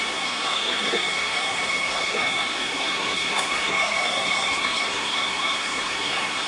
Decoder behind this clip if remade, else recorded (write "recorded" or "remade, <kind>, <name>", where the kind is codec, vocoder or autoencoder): remade, codec, SNAC